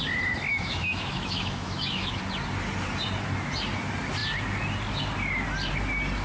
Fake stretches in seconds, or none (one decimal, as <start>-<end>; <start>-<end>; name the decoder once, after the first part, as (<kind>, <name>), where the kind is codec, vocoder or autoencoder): 0.5-2.2 (autoencoder, DAC-VAE)